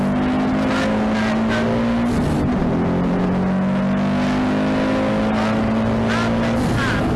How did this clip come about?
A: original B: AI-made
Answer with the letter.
A